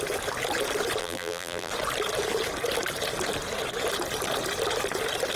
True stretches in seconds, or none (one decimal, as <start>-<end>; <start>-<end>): 0.0-1.0; 1.7-5.4